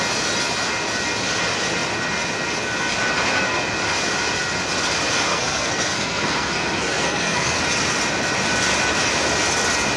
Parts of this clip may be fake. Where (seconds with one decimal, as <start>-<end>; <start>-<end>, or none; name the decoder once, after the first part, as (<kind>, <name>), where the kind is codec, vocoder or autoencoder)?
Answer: 5.3-7.6 (codec, SNAC)